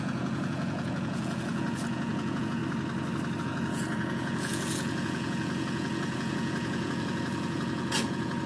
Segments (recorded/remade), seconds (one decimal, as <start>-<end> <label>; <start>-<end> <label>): 0.0-2.6 remade; 2.6-3.4 recorded; 3.4-8.5 remade